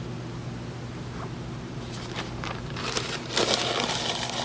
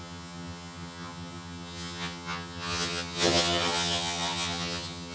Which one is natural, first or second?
first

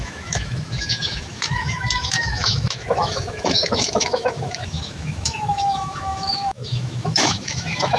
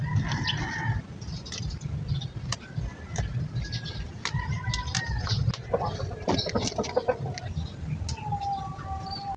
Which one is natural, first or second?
second